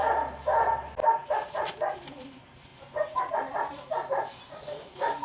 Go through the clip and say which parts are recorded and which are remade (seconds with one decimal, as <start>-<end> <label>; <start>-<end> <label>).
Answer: 0.0-5.2 recorded